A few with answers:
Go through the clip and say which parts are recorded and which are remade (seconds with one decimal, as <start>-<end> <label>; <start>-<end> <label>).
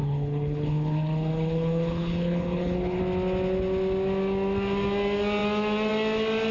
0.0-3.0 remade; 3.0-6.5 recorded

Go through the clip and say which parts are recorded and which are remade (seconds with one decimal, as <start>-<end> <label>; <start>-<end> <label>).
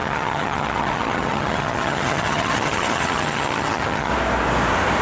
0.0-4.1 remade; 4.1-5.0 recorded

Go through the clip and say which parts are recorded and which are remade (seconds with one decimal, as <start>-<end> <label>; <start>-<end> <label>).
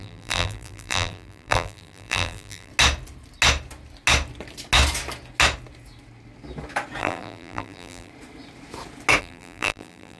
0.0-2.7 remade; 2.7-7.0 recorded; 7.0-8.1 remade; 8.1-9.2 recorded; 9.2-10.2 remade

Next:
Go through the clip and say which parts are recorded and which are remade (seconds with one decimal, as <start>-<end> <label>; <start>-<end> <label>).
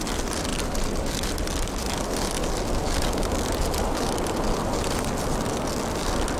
0.0-6.4 recorded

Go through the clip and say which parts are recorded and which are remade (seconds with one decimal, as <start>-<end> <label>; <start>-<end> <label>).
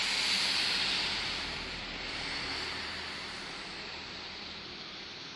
0.0-5.4 recorded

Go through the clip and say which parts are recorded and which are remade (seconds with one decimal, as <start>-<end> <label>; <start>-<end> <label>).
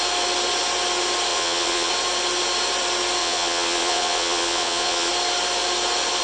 0.0-1.3 recorded; 1.3-1.9 remade; 1.9-3.2 recorded; 3.2-5.1 remade; 5.1-6.2 recorded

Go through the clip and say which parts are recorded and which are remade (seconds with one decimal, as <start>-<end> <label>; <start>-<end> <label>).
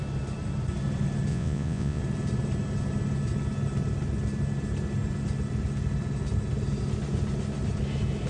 0.0-1.3 recorded; 1.3-2.0 remade; 2.0-8.3 recorded